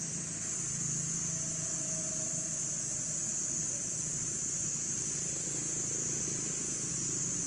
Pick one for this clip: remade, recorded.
recorded